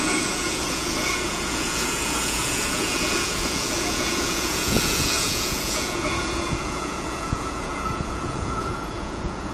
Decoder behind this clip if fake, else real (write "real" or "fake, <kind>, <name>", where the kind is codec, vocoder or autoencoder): fake, vocoder, Vocos